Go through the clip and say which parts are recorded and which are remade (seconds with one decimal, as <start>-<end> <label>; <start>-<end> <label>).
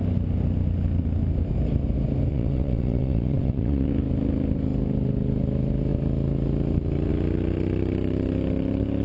0.0-2.3 recorded; 2.3-3.9 remade; 3.9-9.0 recorded